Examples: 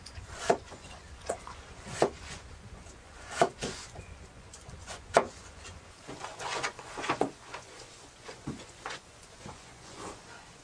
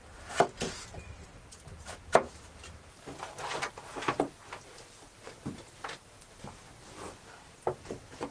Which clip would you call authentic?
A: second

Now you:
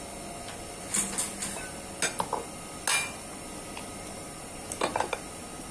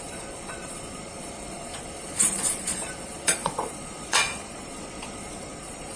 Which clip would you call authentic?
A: first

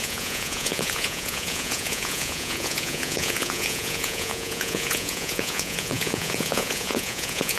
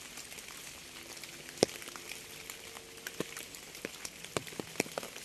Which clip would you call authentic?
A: second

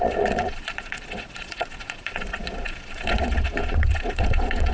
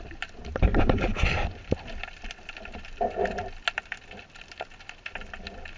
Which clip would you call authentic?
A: second